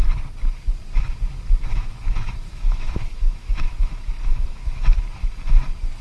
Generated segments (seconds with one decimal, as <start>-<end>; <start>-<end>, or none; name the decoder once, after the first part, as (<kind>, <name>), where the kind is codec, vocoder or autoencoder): 1.7-5.0 (autoencoder, DAC-VAE)